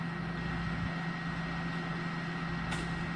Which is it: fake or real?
real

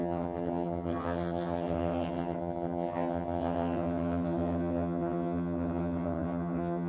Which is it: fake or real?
fake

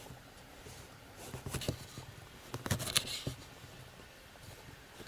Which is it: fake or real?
real